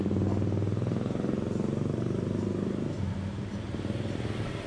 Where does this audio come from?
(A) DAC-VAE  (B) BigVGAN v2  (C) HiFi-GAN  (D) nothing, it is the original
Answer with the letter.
D